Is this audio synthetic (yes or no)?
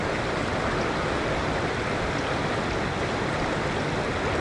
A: no